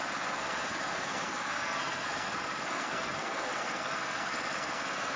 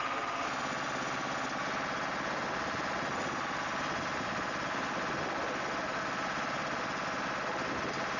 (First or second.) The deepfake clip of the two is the first